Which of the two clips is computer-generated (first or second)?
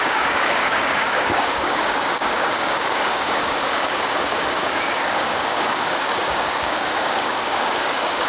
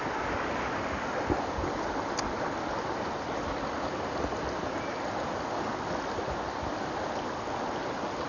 first